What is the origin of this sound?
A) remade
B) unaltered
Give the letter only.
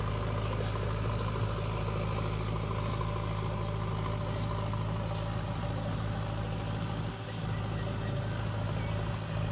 B